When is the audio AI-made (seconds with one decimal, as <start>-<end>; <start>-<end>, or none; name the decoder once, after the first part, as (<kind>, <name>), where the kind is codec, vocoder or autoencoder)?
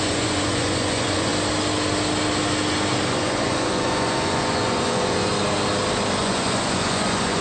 0.0-1.3 (vocoder, Vocos); 3.1-5.3; 6.2-7.4